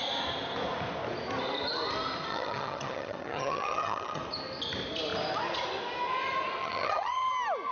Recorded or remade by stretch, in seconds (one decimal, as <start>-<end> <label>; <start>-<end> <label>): 0.0-2.3 recorded; 2.3-4.2 remade; 4.2-6.6 recorded; 6.6-7.3 remade; 7.3-7.7 recorded